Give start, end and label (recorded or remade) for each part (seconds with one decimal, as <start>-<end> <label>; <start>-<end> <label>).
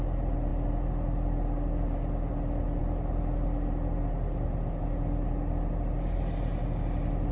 0.0-7.3 recorded